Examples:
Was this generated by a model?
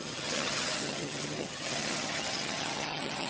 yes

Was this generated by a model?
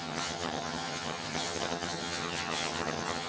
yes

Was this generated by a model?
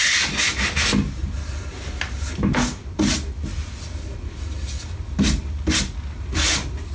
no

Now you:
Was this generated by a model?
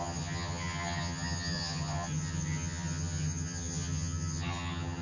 yes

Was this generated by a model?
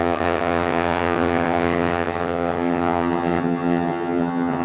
yes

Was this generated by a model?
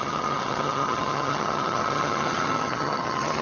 yes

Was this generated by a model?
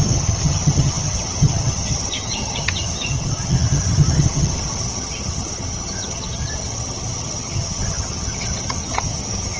yes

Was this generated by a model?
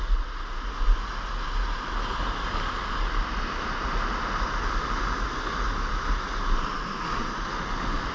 no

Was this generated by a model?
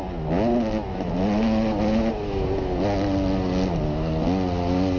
no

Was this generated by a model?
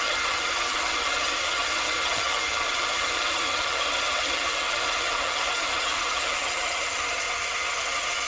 yes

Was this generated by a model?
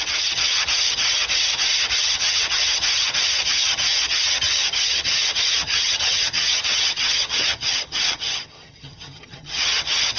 yes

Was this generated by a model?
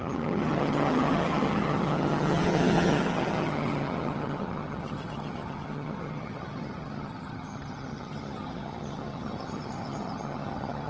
yes